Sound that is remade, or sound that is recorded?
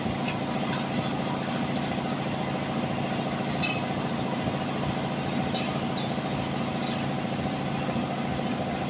recorded